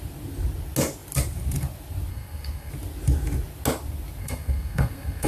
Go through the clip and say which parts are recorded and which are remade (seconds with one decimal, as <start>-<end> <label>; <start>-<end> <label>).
0.0-2.1 recorded; 2.1-2.7 remade; 2.7-4.2 recorded; 4.2-5.3 remade